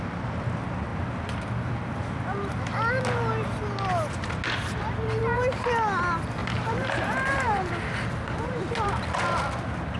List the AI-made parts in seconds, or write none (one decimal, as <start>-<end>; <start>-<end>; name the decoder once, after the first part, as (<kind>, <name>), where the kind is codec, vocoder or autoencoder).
6.4-7.7 (vocoder, BigVGAN v2)